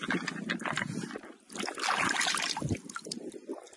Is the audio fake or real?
real